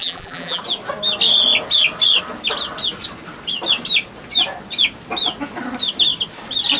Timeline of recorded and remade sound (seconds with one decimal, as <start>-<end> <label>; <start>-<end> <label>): 0.0-0.6 remade; 0.6-6.8 recorded